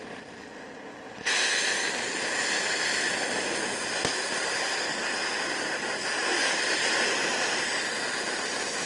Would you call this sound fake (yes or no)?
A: no